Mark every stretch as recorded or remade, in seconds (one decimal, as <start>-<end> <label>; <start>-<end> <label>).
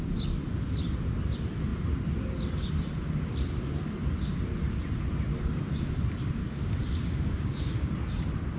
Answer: 0.0-6.4 recorded; 6.4-7.7 remade; 7.7-8.6 recorded